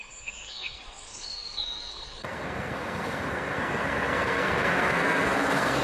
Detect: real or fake fake